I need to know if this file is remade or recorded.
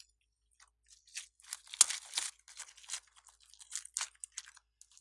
recorded